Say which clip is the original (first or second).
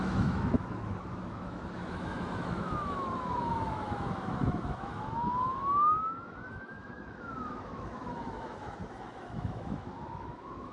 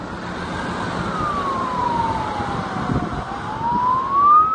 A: second